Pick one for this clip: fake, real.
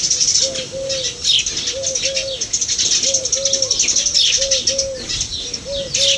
real